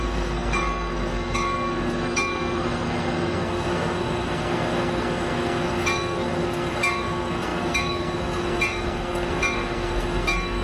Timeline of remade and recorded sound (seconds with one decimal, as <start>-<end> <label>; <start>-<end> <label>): 0.0-10.6 remade